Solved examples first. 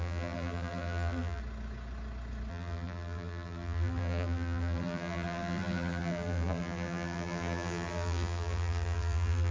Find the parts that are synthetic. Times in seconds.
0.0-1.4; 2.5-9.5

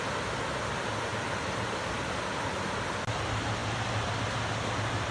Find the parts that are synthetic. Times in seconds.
none

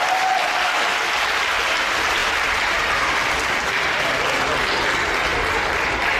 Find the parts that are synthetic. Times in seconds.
2.2-4.0; 5.3-6.2